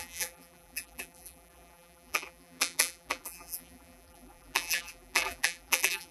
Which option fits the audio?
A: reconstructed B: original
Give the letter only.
A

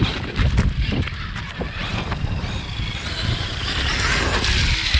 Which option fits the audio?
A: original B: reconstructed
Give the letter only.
A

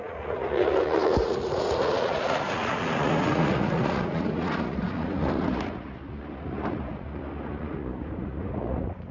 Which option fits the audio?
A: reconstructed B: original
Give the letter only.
A